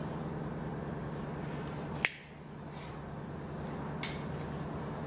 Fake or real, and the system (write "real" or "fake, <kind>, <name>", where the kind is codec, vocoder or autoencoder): real